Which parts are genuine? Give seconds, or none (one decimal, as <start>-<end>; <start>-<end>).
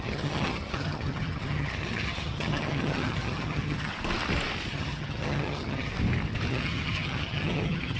3.9-4.7; 5.9-6.5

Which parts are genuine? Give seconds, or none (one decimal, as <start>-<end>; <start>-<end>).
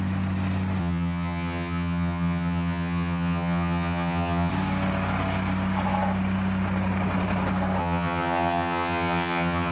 0.0-0.8; 4.5-7.8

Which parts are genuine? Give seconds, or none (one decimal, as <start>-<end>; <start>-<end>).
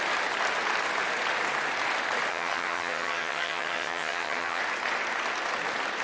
0.0-2.3; 4.6-6.0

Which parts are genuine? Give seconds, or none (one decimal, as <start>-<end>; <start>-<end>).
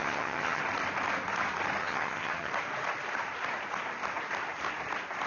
0.6-1.8; 2.5-5.3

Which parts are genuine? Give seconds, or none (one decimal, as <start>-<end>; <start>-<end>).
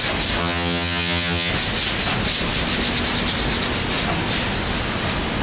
0.0-0.4; 1.5-5.4